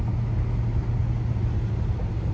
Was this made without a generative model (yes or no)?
yes